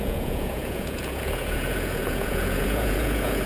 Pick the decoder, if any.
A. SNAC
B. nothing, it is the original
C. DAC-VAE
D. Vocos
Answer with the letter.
D